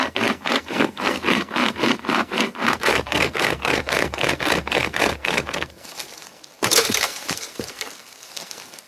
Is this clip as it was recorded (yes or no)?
no